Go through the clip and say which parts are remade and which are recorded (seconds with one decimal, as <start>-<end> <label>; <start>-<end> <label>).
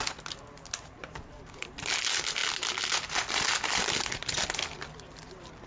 0.0-1.0 recorded; 1.0-1.9 remade; 1.9-5.7 recorded